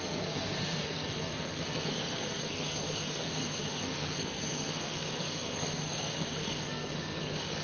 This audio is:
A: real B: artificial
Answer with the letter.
B